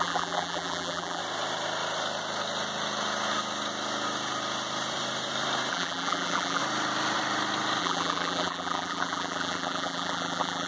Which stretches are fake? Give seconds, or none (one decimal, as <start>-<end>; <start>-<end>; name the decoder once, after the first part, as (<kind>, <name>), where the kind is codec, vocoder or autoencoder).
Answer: 0.0-1.2 (vocoder, BigVGAN v2); 5.7-6.6; 7.8-10.7